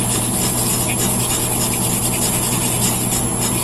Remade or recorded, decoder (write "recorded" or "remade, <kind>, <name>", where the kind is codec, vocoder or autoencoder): recorded